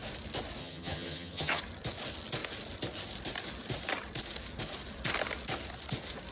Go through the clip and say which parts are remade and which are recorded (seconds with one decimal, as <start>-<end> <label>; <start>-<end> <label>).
0.0-0.6 recorded; 0.6-1.6 remade; 1.6-6.3 recorded